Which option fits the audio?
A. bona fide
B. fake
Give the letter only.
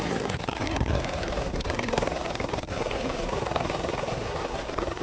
B